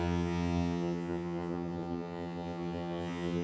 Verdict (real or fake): fake